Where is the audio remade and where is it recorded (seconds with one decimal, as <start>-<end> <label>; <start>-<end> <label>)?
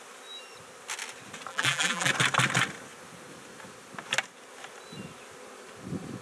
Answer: 0.0-1.5 recorded; 1.5-2.1 remade; 2.1-6.2 recorded